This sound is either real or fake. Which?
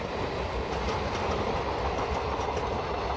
real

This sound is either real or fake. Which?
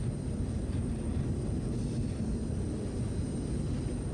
real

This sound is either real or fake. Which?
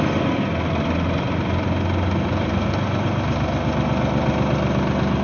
real